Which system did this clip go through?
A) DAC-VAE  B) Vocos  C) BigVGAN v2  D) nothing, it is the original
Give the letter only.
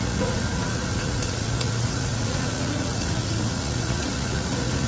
B